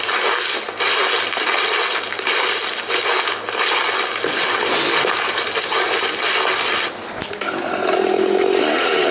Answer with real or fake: real